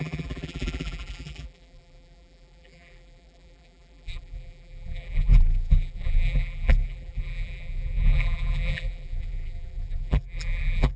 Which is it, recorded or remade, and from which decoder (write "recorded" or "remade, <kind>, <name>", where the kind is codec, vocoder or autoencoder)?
remade, vocoder, BigVGAN v2